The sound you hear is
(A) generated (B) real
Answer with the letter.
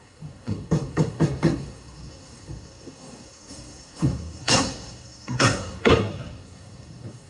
A